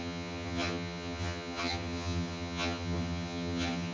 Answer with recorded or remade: remade